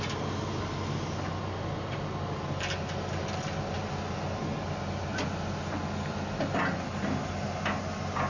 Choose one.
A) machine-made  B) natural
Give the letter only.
B